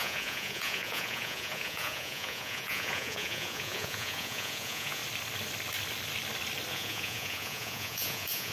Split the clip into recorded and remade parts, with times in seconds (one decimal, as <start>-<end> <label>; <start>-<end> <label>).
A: 0.0-5.0 remade; 5.0-6.7 recorded; 6.7-8.5 remade